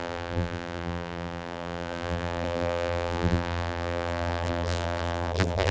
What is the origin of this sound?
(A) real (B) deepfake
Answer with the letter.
B